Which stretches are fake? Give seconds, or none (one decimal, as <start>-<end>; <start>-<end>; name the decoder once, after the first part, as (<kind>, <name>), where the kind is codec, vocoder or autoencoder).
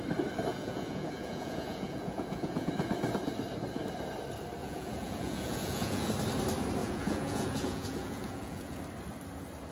0.5-2.7 (vocoder, Vocos); 4.6-6.1; 6.8-8.8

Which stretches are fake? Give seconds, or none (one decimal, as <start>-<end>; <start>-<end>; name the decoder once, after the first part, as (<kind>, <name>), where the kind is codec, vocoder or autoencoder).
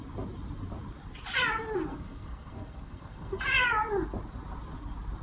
1.9-3.4 (codec, SNAC)